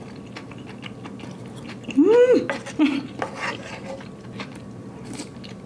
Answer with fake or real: real